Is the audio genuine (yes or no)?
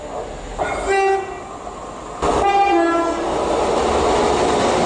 yes